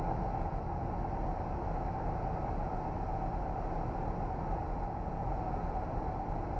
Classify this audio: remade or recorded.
recorded